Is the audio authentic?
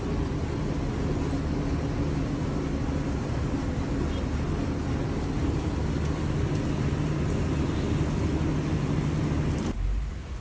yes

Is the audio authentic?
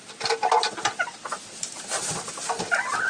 yes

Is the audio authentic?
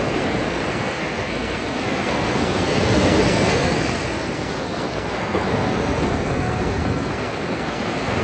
no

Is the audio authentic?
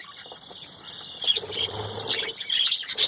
yes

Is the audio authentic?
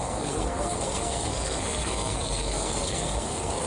no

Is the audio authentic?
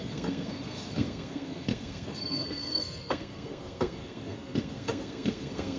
no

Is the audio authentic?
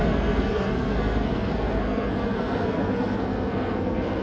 no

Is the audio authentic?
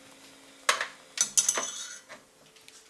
yes